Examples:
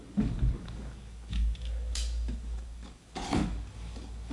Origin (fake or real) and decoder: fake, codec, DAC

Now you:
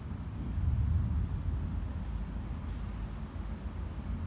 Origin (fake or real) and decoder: real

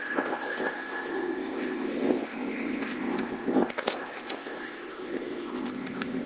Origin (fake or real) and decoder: fake, codec, ZipCodec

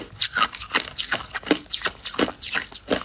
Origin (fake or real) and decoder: real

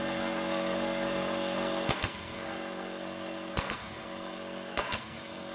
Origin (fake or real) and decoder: fake, codec, SNAC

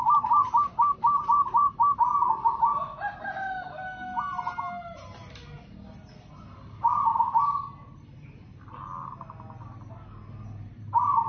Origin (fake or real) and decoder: real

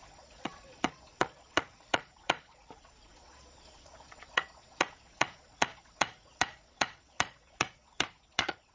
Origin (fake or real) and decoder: fake, vocoder, Vocos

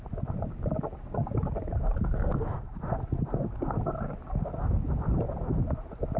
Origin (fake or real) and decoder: real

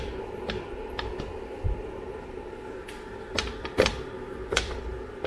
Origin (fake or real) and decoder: fake, vocoder, BigVGAN v2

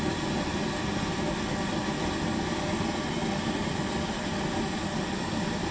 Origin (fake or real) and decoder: real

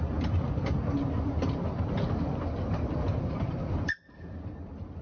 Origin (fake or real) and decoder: real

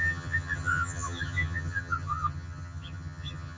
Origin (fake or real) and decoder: fake, vocoder, HiFi-GAN